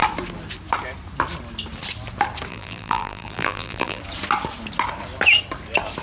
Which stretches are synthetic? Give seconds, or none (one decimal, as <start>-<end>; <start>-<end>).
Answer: 2.5-4.0